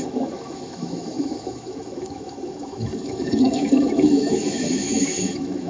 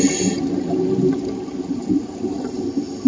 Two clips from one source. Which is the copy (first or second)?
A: first